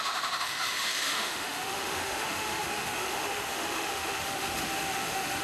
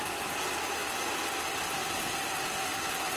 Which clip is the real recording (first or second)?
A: second